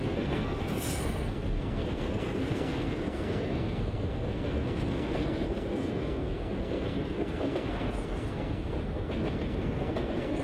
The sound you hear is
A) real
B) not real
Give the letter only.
B